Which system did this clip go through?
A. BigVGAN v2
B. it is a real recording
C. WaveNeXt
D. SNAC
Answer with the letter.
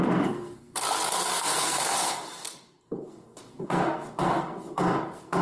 D